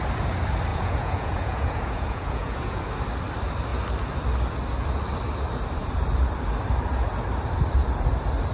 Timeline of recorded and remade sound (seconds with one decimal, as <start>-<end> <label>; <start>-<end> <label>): 0.0-0.7 recorded; 0.7-2.8 remade; 2.8-8.5 recorded

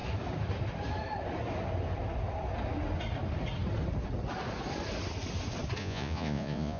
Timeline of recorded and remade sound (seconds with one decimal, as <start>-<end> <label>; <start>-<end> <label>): 0.0-5.8 recorded; 5.8-6.8 remade

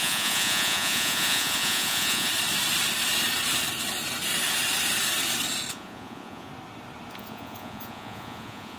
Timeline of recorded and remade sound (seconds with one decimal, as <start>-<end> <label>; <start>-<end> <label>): 0.0-2.3 remade; 2.3-5.7 recorded; 5.7-6.5 remade; 6.5-7.1 recorded; 7.1-8.8 remade